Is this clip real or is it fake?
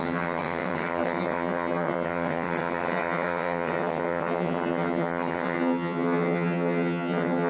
fake